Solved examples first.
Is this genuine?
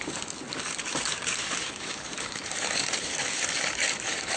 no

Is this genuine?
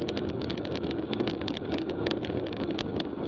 no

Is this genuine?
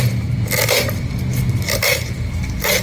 yes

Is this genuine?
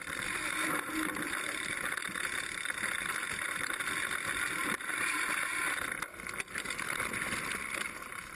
yes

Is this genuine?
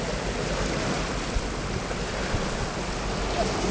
yes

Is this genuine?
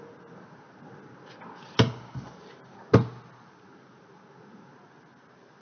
yes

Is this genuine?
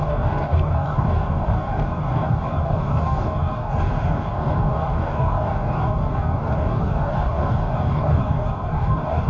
no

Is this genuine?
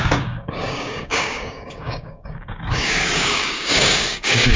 no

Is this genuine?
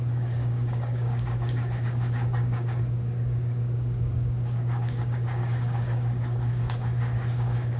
no